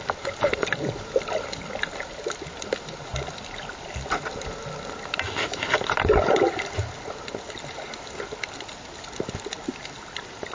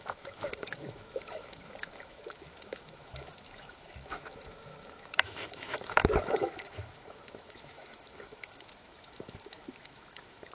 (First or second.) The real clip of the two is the first